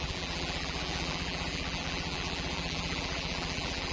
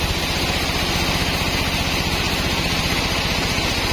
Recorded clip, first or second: second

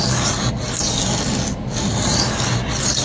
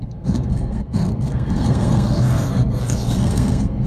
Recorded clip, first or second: first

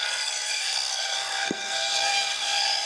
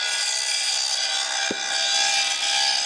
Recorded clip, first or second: second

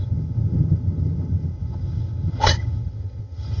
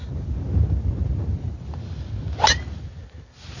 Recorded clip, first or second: second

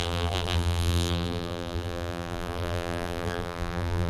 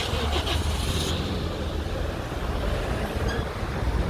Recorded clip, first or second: second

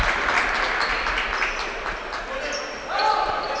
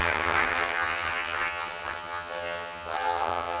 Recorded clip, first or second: first